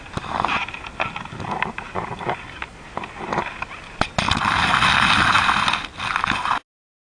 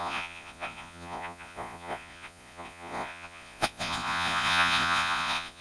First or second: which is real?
first